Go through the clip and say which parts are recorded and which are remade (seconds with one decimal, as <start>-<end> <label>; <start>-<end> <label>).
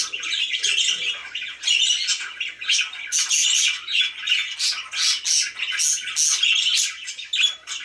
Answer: 0.0-7.8 recorded